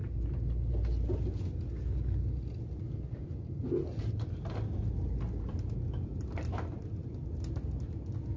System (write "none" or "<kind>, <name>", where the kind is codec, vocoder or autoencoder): none